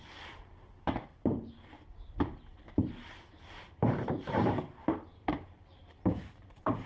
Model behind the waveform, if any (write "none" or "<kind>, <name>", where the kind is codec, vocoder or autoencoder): vocoder, BigVGAN v2